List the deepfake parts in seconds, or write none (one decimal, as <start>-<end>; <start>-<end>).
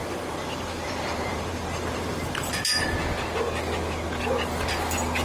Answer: 0.0-2.6